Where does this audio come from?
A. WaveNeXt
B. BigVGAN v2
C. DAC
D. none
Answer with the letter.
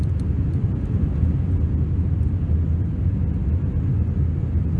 D